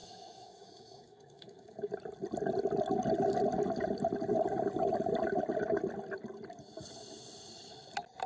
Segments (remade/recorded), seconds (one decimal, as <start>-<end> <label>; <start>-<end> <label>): 0.0-1.9 remade; 1.9-8.3 recorded